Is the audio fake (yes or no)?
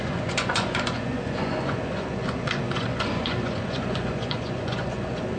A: yes